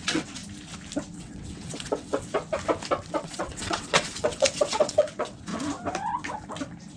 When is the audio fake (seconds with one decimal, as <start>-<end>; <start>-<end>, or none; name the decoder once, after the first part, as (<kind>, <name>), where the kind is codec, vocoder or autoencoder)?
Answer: 0.0-0.4 (vocoder, WaveNeXt); 1.2-2.3; 3.2-5.5